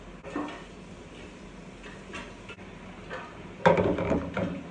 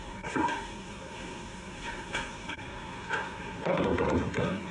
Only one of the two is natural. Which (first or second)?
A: first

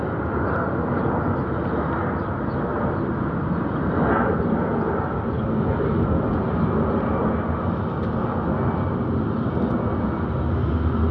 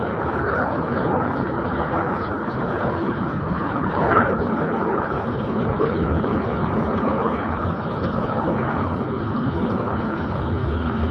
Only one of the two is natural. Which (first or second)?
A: first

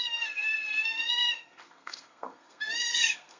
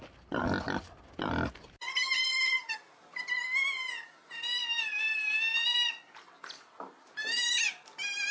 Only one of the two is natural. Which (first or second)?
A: second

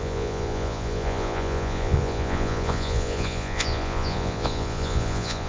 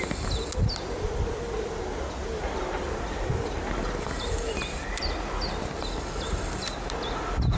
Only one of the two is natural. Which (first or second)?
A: second